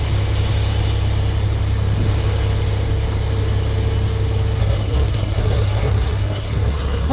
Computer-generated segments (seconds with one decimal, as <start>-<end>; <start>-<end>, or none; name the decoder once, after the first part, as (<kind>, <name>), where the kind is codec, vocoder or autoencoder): 4.6-7.1 (codec, SNAC)